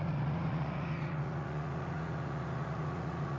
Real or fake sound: fake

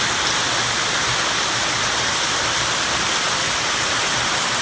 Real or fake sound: real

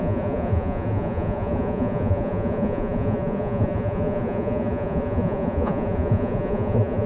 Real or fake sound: fake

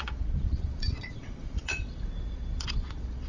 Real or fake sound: fake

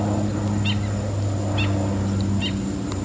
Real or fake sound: real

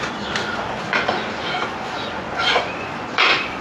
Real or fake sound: fake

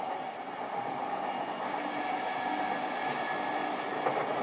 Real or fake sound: real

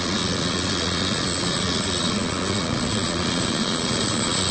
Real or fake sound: fake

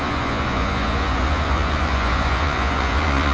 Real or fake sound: fake